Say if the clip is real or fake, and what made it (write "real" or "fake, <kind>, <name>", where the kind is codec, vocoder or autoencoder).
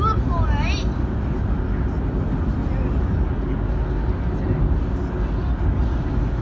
real